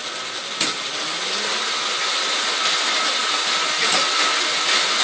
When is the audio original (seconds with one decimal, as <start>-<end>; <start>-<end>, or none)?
0.0-5.0